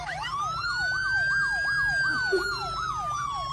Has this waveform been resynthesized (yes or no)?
no